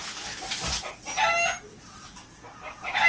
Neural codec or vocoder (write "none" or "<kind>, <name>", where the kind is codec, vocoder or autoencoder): none